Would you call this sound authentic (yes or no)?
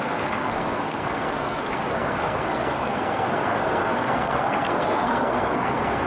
no